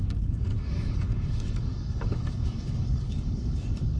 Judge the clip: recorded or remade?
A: remade